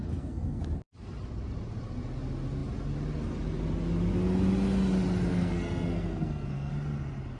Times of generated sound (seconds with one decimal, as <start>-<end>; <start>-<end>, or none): 0.0-0.6; 5.3-6.7